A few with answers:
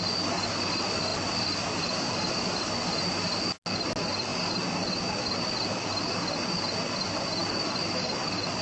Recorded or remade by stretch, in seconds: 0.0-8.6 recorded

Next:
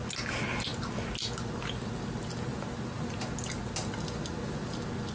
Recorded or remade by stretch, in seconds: 0.0-5.1 recorded

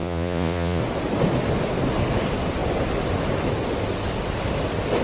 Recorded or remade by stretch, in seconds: 0.0-0.8 remade; 0.8-5.0 recorded

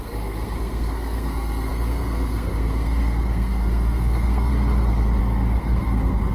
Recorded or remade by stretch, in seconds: 0.0-4.5 remade; 4.5-5.2 recorded; 5.2-6.3 remade

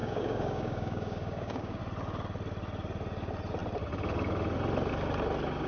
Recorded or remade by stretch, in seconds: 0.0-1.8 remade; 1.8-5.7 recorded